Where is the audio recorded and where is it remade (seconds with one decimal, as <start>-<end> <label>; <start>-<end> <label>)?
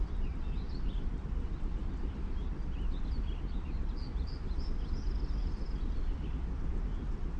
0.0-7.4 recorded